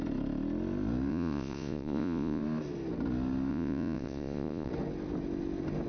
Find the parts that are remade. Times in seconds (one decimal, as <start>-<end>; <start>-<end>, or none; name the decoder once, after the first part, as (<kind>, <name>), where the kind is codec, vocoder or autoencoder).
1.1-2.4 (vocoder, Vocos); 3.5-4.7

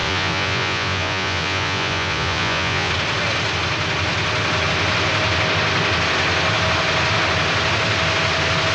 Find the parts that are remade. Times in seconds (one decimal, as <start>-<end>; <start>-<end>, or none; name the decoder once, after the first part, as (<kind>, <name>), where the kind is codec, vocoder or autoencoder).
0.0-2.9 (vocoder, Vocos)

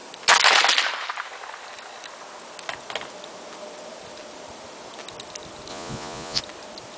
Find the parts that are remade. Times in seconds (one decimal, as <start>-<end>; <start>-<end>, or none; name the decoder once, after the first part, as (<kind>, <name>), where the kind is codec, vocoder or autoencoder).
5.7-6.4 (vocoder, Vocos)

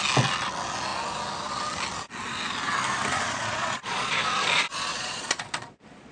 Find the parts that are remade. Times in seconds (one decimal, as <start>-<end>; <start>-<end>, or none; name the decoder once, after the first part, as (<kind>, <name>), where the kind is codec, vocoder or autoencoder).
3.1-4.1 (vocoder, Vocos); 4.9-6.1